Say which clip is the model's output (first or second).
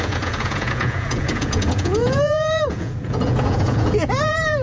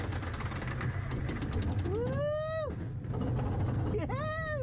first